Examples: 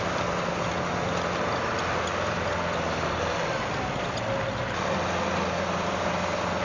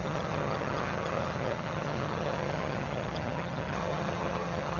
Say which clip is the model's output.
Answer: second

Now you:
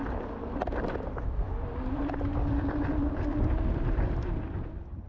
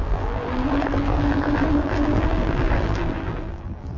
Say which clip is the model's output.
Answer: second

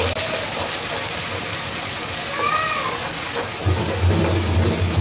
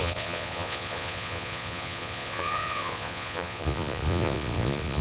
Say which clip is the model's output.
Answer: second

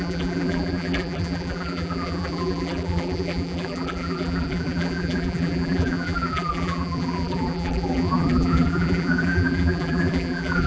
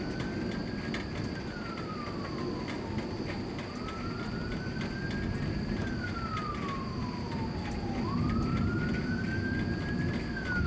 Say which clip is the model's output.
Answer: first